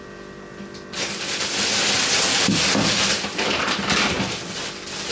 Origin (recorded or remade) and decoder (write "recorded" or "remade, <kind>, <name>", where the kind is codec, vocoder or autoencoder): recorded